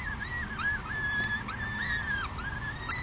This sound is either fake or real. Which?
real